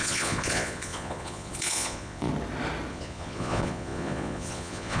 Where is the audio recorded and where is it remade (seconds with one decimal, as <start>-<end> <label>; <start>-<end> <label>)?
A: 0.0-2.3 remade; 2.3-2.9 recorded; 2.9-5.0 remade